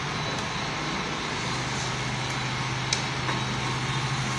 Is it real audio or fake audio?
real